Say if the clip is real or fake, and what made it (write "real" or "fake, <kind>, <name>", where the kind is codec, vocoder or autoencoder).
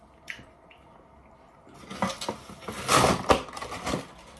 real